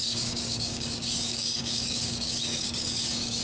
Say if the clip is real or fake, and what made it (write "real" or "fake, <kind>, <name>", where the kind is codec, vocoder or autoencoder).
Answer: fake, codec, DAC